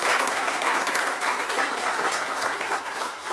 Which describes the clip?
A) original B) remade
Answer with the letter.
B